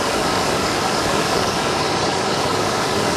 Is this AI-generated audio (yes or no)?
yes